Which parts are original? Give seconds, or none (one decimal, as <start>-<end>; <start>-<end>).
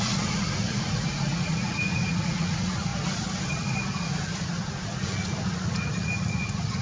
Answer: 2.9-3.5